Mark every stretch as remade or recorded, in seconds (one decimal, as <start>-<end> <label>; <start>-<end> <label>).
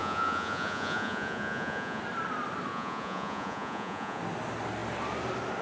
0.0-2.0 remade; 2.0-2.7 recorded; 2.7-4.2 remade; 4.2-5.6 recorded